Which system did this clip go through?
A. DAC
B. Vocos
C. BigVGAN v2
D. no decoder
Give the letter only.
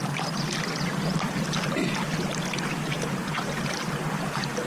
D